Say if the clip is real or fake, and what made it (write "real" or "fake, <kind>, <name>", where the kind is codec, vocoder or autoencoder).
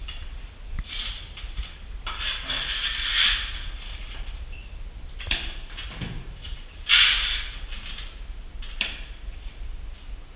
real